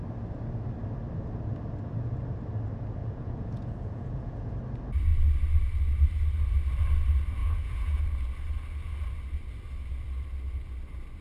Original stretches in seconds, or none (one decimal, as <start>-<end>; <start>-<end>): 0.0-3.0; 4.5-7.4; 8.0-11.2